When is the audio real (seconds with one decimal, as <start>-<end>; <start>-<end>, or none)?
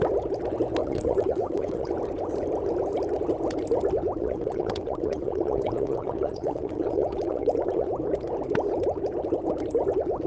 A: 0.0-0.8; 1.9-4.2; 7.9-10.3